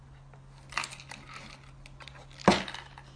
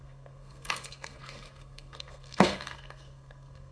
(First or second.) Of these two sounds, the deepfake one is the second